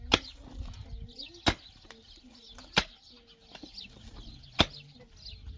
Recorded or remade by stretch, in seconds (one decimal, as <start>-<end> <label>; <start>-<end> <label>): 0.0-5.6 recorded